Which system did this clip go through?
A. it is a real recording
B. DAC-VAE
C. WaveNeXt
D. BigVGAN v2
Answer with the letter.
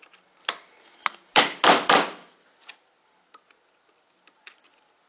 A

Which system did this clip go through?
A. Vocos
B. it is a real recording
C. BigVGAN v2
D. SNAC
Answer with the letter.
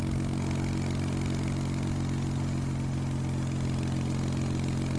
B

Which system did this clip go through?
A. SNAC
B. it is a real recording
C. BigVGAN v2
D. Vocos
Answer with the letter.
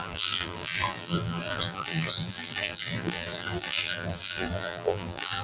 C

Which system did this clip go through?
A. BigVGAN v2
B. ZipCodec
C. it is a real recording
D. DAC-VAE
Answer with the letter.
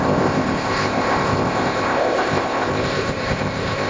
B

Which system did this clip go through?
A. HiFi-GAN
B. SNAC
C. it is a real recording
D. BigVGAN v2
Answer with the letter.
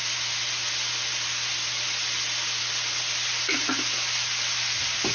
C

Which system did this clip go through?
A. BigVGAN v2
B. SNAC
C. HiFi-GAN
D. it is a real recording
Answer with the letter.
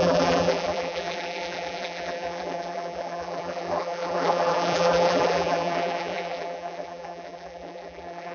A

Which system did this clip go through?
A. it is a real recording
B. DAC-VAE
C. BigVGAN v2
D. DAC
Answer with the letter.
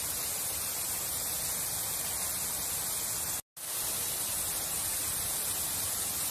A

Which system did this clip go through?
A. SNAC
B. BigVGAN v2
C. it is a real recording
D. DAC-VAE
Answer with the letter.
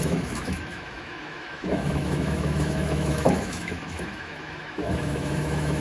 D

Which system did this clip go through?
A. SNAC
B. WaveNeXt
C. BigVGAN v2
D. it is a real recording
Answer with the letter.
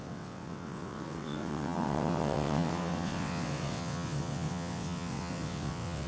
B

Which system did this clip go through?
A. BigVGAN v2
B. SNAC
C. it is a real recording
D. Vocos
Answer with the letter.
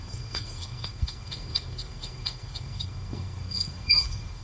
B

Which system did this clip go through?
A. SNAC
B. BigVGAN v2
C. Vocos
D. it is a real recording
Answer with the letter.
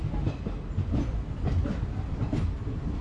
D